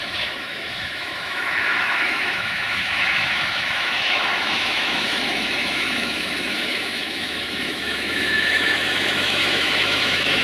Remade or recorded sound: remade